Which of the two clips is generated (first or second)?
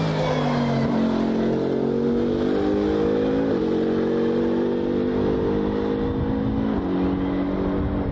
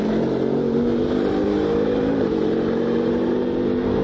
second